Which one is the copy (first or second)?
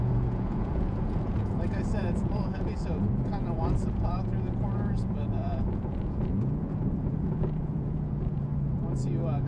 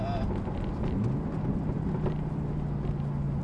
first